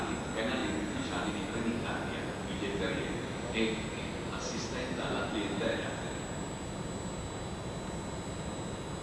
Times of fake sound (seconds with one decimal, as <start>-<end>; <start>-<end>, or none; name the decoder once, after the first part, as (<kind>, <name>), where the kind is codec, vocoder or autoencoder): none